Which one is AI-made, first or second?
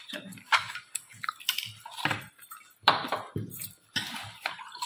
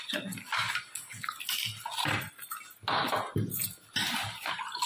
first